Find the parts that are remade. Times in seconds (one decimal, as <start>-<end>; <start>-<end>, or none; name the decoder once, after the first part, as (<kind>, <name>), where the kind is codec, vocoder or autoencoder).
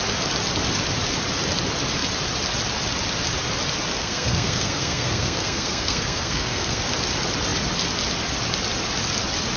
3.9-6.8 (codec, SNAC)